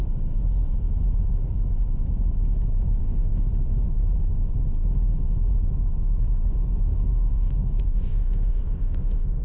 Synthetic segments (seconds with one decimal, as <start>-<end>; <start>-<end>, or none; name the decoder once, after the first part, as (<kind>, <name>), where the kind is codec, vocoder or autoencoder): 3.0-3.5 (autoencoder, DAC-VAE); 6.9-9.4